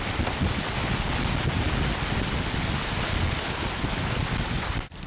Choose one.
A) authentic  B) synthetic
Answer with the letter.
A